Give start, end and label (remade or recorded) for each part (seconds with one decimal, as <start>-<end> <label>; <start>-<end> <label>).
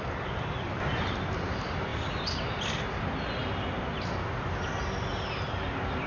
0.0-6.1 recorded